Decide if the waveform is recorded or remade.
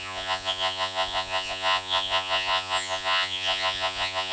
remade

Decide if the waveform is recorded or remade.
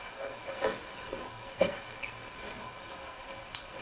remade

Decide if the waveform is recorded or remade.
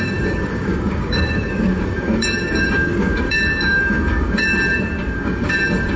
remade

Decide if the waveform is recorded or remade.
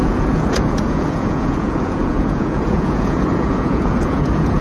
remade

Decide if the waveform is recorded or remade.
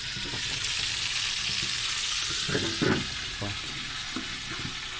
recorded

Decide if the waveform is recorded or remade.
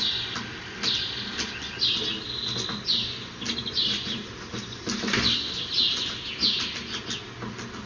recorded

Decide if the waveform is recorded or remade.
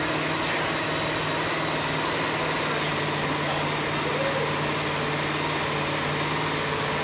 recorded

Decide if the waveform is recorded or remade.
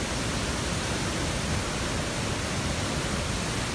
recorded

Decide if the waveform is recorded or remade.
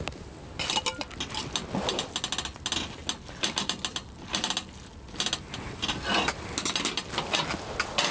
recorded